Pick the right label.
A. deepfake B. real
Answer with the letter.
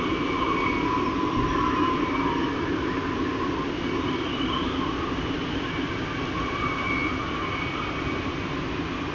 B